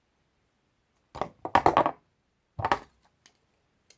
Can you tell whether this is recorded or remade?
recorded